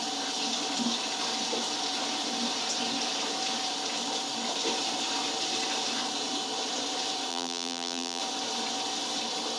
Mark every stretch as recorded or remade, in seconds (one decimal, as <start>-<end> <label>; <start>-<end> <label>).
0.0-7.3 recorded; 7.3-8.2 remade; 8.2-9.6 recorded